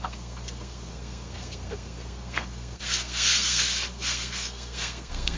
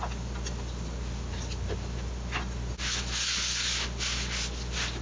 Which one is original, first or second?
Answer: second